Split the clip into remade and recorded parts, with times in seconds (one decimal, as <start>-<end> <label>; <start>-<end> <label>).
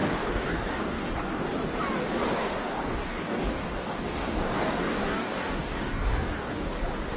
0.0-1.1 remade; 1.1-2.4 recorded; 2.4-6.7 remade; 6.7-7.2 recorded